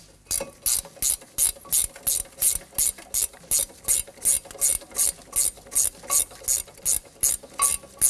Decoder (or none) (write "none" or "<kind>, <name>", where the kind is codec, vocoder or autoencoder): none